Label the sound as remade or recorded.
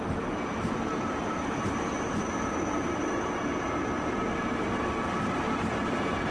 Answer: remade